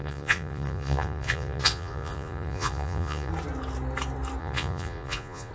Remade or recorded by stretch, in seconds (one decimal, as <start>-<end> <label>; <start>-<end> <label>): 0.0-3.3 remade; 3.3-4.4 recorded; 4.4-5.5 remade